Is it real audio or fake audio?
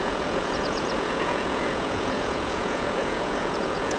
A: fake